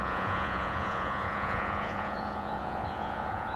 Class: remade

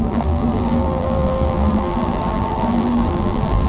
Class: remade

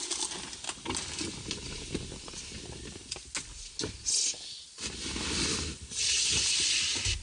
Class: recorded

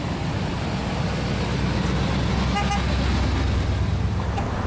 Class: recorded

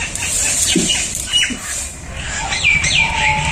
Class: remade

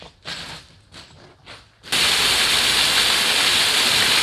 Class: recorded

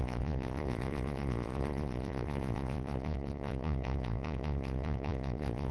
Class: remade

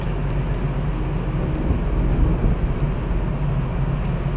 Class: recorded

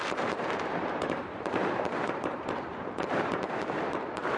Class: remade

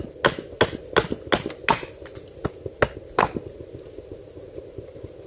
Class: recorded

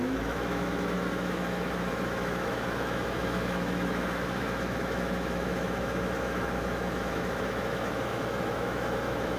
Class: remade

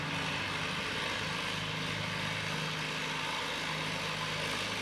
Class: recorded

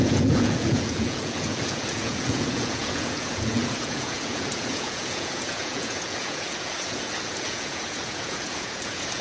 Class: remade